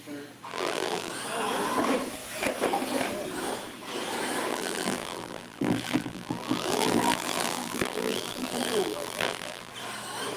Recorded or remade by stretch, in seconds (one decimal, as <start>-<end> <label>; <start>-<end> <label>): 0.0-0.5 recorded; 0.5-1.1 remade; 1.1-4.5 recorded; 4.5-9.7 remade; 9.7-10.4 recorded